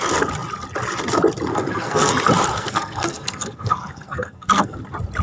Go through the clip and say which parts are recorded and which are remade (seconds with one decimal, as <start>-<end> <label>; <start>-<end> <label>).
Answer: 0.0-1.5 recorded; 1.5-2.1 remade; 2.1-2.5 recorded; 2.5-4.8 remade; 4.8-5.2 recorded